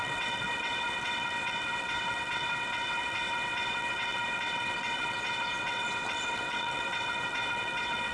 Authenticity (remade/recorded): remade